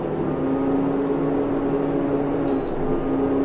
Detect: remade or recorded recorded